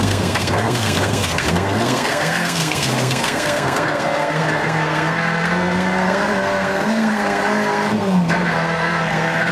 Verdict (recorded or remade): remade